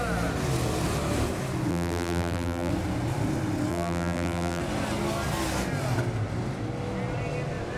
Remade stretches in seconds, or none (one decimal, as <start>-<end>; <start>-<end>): 1.7-2.7; 3.7-4.6